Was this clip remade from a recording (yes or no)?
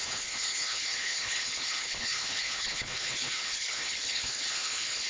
yes